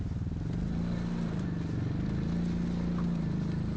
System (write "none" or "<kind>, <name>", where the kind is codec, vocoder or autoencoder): none